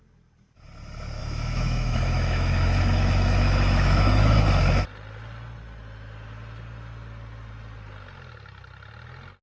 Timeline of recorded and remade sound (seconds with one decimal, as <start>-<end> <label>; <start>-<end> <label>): 0.0-1.2 recorded; 1.2-4.4 remade; 4.4-9.4 recorded